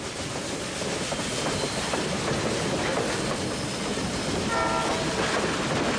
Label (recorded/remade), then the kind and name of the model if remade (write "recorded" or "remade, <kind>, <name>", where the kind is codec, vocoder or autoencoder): recorded